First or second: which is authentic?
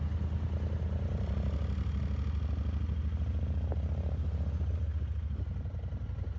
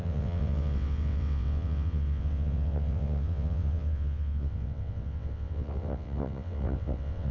first